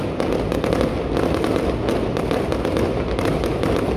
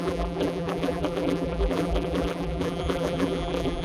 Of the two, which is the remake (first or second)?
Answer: second